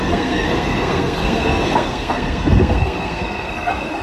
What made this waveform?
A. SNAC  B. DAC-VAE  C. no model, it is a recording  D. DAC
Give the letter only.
A